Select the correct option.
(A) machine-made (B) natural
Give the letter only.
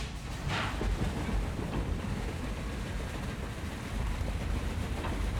A